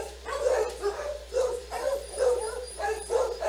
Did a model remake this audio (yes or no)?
yes